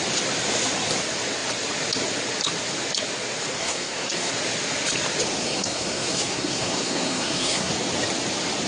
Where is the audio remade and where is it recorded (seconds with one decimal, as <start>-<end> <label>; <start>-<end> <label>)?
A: 0.0-3.6 recorded; 3.6-4.3 remade; 4.3-5.4 recorded; 5.4-7.7 remade; 7.7-8.7 recorded